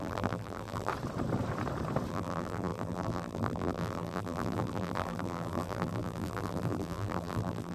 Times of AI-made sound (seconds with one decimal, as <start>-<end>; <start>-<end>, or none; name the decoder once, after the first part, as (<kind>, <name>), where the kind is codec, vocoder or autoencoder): 0.0-0.9 (vocoder, BigVGAN v2); 2.1-7.7

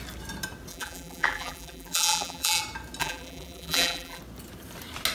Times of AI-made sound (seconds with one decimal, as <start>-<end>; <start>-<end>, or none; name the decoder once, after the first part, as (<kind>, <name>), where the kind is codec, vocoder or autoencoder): 0.7-2.6 (vocoder, BigVGAN v2); 3.0-4.2